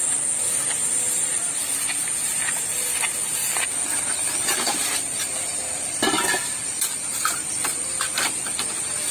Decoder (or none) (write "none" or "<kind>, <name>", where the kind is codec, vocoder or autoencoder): none